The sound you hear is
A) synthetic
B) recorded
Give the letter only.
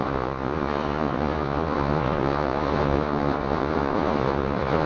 A